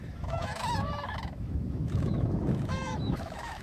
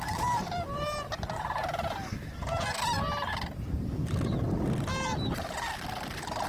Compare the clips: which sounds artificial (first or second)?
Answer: first